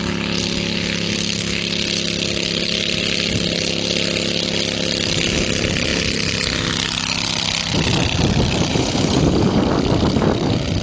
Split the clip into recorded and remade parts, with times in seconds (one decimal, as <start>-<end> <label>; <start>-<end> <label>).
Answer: 0.0-8.7 recorded; 8.7-9.6 remade; 9.6-10.8 recorded